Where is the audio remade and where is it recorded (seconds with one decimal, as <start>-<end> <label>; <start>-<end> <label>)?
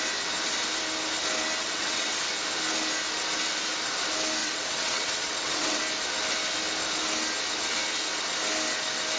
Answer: 0.0-1.6 recorded; 1.6-2.2 remade; 2.2-4.4 recorded; 4.4-5.8 remade; 5.8-9.2 recorded